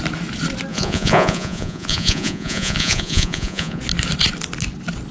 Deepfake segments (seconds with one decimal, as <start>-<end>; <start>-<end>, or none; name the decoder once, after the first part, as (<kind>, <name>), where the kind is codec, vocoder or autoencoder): 0.7-3.8 (vocoder, Vocos)